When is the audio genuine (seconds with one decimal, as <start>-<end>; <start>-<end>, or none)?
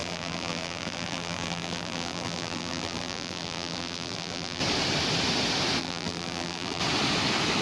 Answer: 4.6-5.8; 6.8-7.6